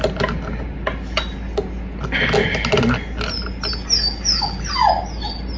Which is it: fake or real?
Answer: real